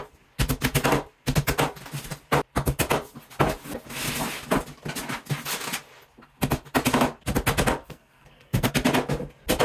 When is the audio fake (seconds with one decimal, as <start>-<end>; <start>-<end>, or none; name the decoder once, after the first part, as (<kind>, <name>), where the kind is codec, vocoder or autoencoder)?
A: 7.8-8.7 (codec, SNAC)